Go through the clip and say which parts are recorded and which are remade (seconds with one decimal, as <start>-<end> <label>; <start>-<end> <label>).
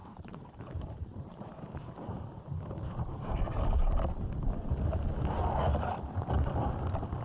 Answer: 0.0-2.1 remade; 2.1-7.2 recorded